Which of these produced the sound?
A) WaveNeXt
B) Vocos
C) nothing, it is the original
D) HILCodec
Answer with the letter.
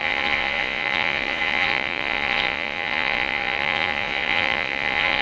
B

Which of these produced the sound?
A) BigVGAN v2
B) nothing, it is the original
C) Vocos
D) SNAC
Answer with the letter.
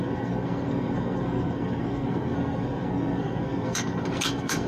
D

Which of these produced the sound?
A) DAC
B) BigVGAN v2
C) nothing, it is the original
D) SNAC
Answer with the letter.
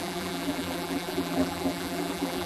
B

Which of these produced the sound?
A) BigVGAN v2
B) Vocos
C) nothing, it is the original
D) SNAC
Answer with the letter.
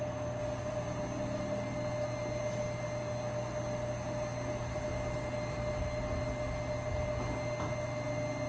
C